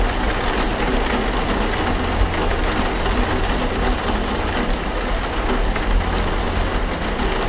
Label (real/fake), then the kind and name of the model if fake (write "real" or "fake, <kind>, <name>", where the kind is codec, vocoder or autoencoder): real